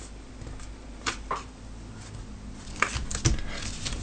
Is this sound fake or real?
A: real